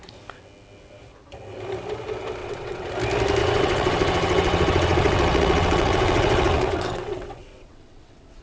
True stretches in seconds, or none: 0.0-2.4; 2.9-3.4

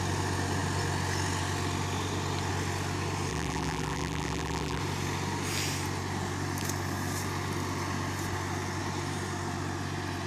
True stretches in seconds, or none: 0.0-3.3; 4.8-10.3